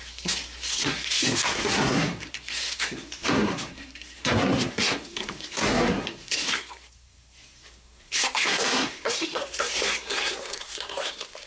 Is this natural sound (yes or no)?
no